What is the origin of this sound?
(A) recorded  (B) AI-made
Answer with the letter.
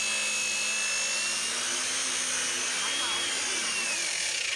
A